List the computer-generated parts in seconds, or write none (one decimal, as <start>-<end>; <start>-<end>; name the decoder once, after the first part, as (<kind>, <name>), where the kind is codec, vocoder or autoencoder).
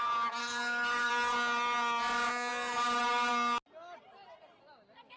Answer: 0.4-1.1 (codec, SNAC)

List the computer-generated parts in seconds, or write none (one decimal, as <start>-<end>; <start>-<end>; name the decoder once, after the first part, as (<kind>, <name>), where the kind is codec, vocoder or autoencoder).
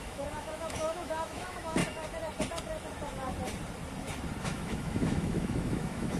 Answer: 0.0-1.8 (autoencoder, DAC-VAE); 4.4-6.2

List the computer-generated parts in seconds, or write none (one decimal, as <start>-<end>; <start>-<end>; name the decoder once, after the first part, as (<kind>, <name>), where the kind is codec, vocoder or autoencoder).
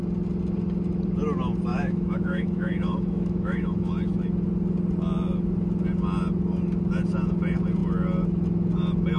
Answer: 1.7-3.9 (autoencoder, DAC-VAE)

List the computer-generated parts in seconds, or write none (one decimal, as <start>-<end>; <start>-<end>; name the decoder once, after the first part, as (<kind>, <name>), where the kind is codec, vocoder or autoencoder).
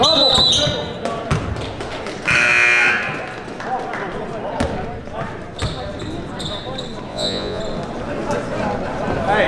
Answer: 7.1-7.6 (vocoder, Vocos)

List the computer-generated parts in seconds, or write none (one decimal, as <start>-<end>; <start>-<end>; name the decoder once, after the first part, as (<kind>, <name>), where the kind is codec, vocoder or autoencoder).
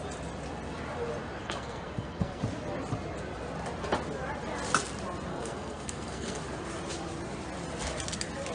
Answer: 1.4-2.4 (codec, SNAC); 5.3-6.4